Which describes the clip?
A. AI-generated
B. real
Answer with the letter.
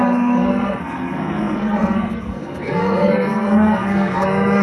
A